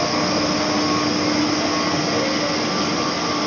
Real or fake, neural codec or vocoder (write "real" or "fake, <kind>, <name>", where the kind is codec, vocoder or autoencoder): real